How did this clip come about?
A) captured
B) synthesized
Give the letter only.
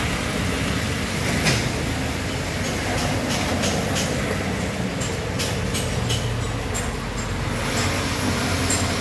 A